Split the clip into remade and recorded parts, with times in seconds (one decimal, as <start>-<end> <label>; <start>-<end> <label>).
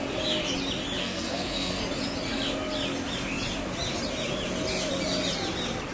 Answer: 0.0-1.0 recorded; 1.0-1.8 remade; 1.8-5.9 recorded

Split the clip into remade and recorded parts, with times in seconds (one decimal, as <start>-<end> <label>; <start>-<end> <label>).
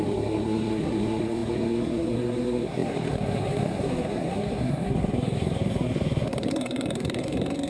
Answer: 0.0-7.7 remade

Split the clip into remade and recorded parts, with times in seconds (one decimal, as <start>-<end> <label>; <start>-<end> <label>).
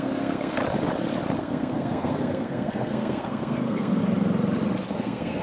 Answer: 0.0-0.6 remade; 0.6-1.4 recorded; 1.4-4.0 remade; 4.0-4.9 recorded; 4.9-5.4 remade